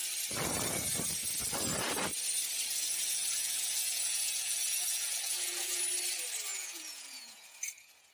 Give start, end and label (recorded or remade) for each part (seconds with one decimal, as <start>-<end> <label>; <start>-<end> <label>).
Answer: 0.0-2.8 recorded; 2.8-5.8 remade; 5.8-6.5 recorded; 6.5-8.1 remade